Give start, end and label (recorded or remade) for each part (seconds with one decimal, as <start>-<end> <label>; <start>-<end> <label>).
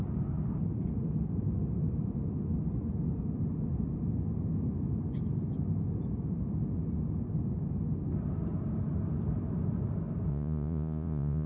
0.0-10.3 recorded; 10.3-11.5 remade